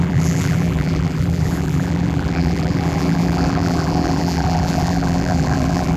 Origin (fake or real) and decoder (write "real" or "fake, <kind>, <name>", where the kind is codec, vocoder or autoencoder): fake, vocoder, BigVGAN v2